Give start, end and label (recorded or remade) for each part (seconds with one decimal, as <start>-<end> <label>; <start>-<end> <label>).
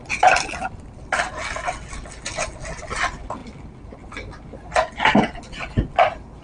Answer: 0.0-6.4 recorded